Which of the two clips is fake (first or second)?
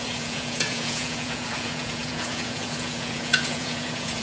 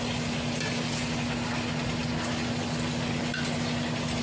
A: first